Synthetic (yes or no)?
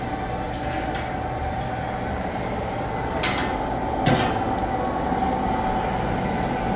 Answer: no